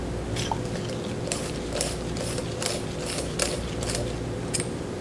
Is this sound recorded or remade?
recorded